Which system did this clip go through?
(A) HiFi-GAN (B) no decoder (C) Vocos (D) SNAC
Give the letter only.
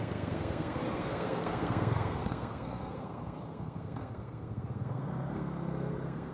D